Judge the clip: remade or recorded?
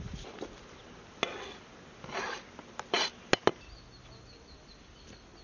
recorded